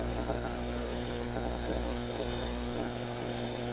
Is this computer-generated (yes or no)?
yes